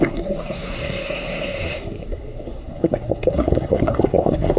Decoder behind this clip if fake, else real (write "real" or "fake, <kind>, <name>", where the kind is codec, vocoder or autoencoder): fake, codec, SNAC